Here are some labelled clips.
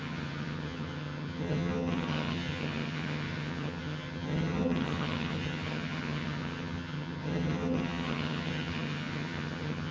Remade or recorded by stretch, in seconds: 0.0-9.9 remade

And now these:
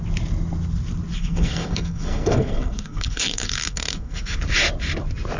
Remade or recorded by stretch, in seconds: 0.0-1.2 recorded; 1.2-4.4 remade; 4.4-5.4 recorded

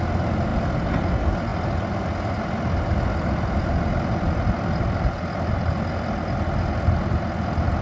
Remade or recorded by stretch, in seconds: 0.0-7.8 recorded

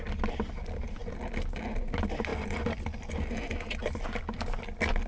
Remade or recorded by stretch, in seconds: 0.0-2.3 recorded; 2.3-4.2 remade; 4.2-5.1 recorded

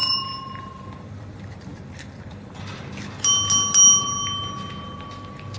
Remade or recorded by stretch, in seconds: 0.0-2.6 remade; 2.6-5.6 recorded

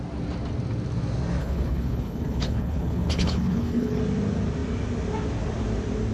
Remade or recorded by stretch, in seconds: 0.0-1.4 recorded; 1.4-4.0 remade; 4.0-6.1 recorded